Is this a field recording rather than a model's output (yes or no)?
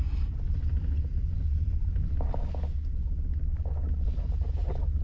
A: yes